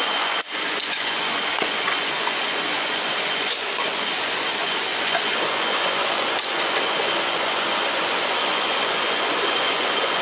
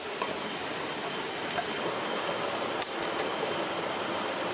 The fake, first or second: first